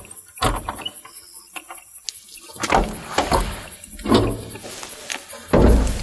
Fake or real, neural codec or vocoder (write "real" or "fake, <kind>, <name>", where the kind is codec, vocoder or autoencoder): real